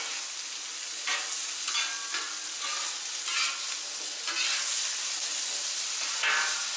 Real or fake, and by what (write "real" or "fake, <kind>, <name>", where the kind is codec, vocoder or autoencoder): real